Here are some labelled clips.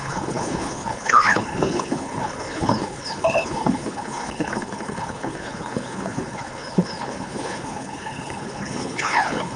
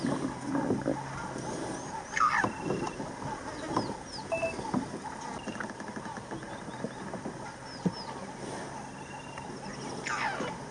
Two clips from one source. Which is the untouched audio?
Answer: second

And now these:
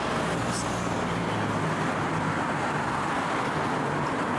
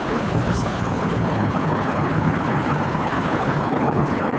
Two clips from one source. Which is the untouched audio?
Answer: first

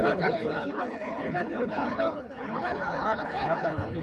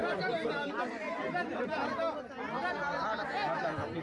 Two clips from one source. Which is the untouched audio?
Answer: second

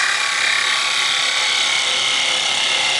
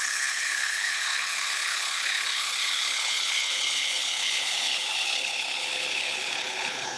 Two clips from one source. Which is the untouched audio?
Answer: first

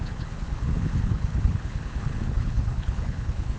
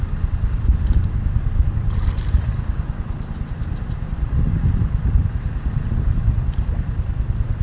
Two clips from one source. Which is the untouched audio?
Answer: second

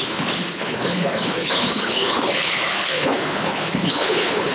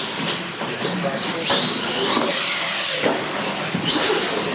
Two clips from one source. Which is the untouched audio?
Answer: second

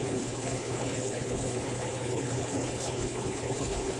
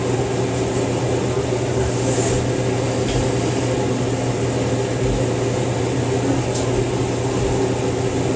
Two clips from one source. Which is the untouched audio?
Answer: second